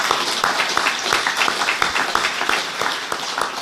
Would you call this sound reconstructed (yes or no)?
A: no